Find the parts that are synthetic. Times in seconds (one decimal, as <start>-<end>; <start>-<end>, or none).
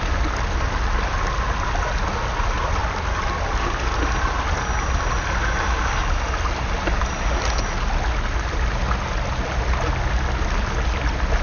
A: none